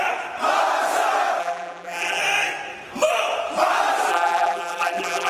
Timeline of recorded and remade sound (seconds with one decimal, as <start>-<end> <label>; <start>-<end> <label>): 0.0-1.4 recorded; 1.4-2.2 remade; 2.2-4.1 recorded; 4.1-5.3 remade